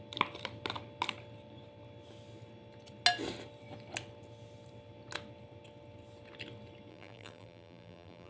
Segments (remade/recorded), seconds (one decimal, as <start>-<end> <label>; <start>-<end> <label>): 0.0-6.9 recorded; 6.9-8.3 remade